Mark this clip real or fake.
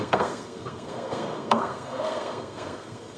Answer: fake